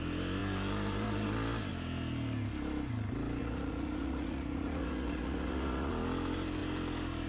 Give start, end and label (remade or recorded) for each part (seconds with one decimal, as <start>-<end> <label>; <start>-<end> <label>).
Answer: 0.0-3.4 recorded; 3.4-5.9 remade; 5.9-7.3 recorded